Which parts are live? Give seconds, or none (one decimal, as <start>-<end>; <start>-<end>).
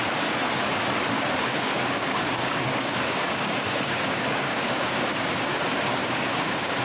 0.0-1.5; 5.6-6.0